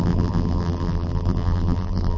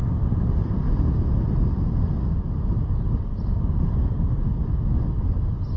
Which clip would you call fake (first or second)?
first